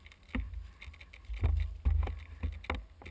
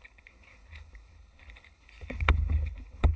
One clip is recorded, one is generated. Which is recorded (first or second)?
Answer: first